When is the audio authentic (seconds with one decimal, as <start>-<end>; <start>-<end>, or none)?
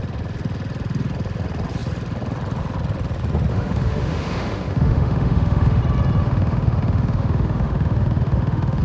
0.0-3.5; 5.8-6.2